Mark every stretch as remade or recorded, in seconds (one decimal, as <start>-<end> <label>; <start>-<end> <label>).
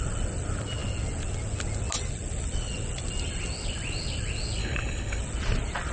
0.0-4.6 recorded; 4.6-5.2 remade; 5.2-5.9 recorded